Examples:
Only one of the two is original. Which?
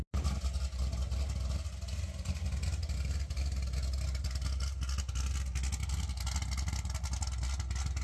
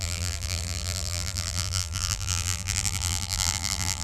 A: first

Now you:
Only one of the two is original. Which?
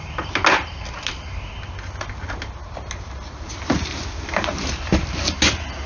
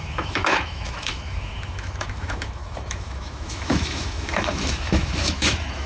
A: first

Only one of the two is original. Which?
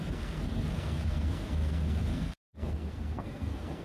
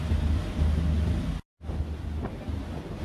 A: second